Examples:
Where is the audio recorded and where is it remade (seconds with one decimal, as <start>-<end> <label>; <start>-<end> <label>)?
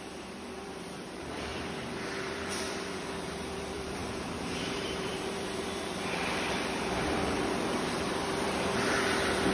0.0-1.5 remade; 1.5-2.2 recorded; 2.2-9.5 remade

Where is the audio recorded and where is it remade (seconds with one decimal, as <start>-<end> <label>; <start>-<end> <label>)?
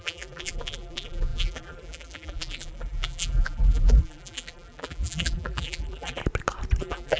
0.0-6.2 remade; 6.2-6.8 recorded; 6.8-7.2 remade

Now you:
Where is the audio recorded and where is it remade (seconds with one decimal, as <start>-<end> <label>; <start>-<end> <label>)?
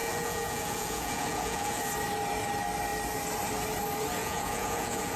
0.0-1.8 remade; 1.8-4.2 recorded; 4.2-5.2 remade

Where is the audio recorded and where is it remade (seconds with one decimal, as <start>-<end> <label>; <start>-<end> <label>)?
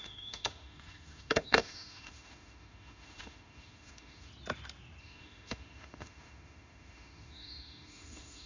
0.0-4.3 remade; 4.3-5.0 recorded; 5.0-8.5 remade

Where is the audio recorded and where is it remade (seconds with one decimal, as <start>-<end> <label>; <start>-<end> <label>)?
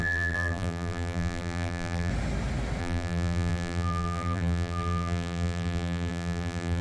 0.0-2.1 remade; 2.1-2.8 recorded; 2.8-6.8 remade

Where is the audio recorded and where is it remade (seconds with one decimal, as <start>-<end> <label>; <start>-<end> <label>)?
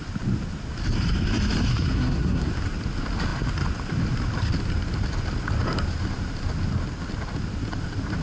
0.0-1.7 recorded; 1.7-2.5 remade; 2.5-8.2 recorded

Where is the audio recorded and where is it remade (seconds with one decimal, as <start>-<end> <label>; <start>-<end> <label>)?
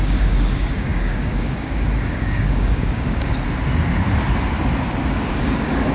0.0-3.3 remade; 3.3-5.3 recorded; 5.3-5.9 remade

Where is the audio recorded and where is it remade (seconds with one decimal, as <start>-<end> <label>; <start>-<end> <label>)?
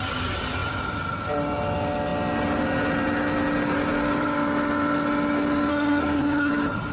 0.0-5.7 recorded; 5.7-6.5 remade; 6.5-6.9 recorded